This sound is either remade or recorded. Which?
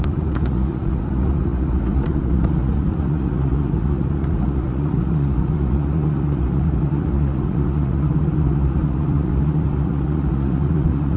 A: remade